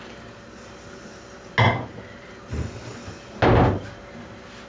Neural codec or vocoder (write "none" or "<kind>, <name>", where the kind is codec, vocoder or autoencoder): none